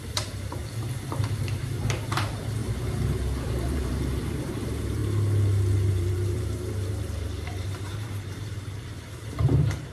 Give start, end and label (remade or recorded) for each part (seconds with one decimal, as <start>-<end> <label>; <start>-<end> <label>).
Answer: 0.0-0.6 remade; 0.6-1.3 recorded; 1.3-2.6 remade; 2.6-3.1 recorded; 3.1-5.0 remade; 5.0-5.9 recorded; 5.9-9.9 remade